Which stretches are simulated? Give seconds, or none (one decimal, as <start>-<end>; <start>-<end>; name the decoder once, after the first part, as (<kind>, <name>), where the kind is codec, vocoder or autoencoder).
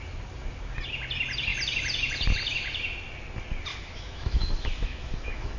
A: 3.7-5.6 (autoencoder, DAC-VAE)